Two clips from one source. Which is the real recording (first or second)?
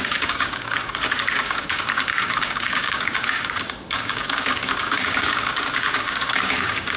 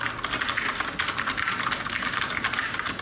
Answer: second